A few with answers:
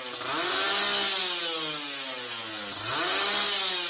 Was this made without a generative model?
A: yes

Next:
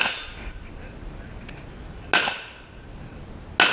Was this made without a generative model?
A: yes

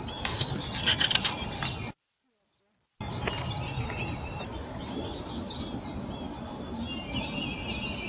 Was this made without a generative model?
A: yes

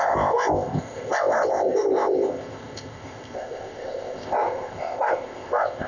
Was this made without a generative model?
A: no